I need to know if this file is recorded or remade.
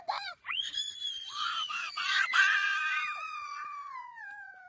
remade